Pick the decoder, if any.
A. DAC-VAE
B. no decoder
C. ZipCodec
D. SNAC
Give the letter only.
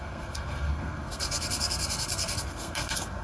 D